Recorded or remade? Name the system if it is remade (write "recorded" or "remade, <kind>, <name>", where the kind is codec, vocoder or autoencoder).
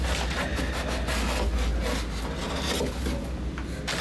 recorded